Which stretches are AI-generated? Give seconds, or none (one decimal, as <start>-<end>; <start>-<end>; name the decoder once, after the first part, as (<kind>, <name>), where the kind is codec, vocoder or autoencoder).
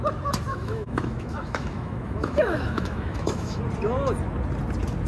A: 0.5-3.6 (autoencoder, DAC-VAE)